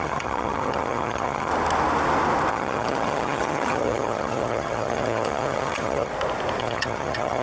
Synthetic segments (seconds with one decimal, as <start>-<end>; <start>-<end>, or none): 0.0-1.5; 2.5-6.1; 6.6-7.4